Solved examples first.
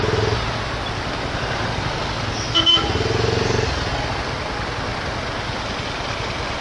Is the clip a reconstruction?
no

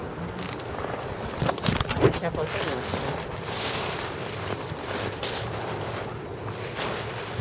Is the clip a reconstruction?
no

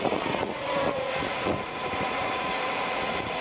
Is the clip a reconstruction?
yes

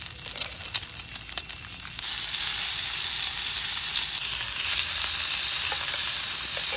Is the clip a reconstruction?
no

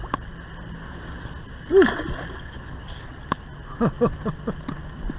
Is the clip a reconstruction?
no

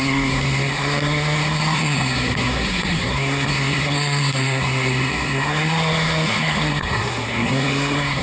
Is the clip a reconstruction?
yes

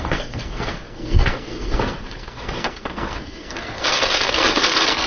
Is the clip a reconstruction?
yes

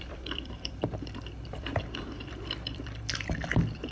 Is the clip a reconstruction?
yes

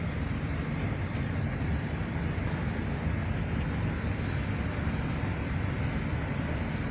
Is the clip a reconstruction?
no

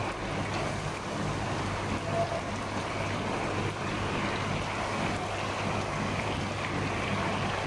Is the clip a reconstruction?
yes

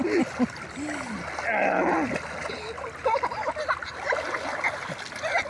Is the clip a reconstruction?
no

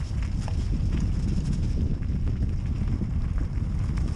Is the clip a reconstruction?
no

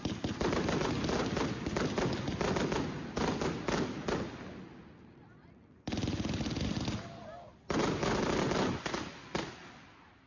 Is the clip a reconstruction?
no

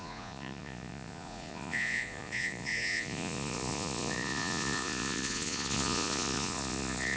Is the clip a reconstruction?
yes